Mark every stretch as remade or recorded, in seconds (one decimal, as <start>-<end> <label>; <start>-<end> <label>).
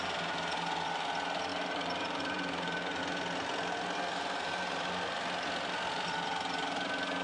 0.0-1.5 recorded; 1.5-3.0 remade; 3.0-7.2 recorded